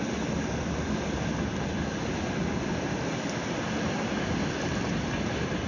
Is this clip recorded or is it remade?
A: recorded